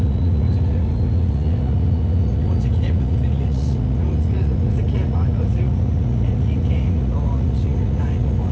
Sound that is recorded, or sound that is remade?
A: remade